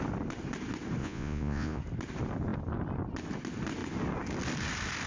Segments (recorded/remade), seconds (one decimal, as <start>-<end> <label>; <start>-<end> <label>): 0.0-1.0 recorded; 1.0-1.8 remade; 1.8-5.1 recorded